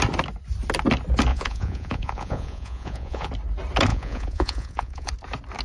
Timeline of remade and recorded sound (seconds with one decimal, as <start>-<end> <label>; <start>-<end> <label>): 0.0-1.3 recorded; 1.3-3.3 remade; 3.3-3.9 recorded; 3.9-5.1 remade; 5.1-5.6 recorded